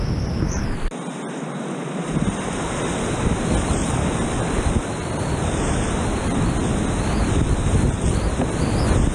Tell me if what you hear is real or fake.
real